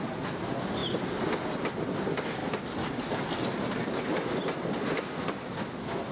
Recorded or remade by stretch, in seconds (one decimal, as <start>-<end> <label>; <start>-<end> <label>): 0.0-6.1 recorded